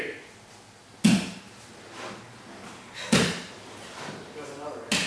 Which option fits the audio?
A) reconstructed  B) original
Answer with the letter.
B